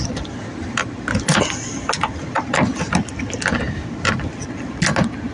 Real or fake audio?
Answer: real